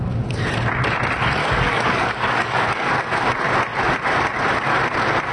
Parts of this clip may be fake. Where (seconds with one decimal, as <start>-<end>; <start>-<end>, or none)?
1.4-2.9